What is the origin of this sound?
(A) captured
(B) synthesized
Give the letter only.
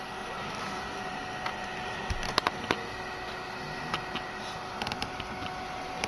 A